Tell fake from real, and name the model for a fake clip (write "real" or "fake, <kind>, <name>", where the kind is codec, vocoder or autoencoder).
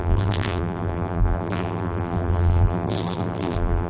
fake, vocoder, BigVGAN v2